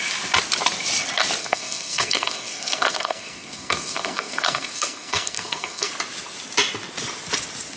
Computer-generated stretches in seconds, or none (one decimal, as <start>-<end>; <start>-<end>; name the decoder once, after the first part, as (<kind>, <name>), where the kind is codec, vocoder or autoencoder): 1.4-5.9 (codec, SNAC)

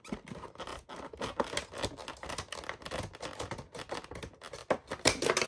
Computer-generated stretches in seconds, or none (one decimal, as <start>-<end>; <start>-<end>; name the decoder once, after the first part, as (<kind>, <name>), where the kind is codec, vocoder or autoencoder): none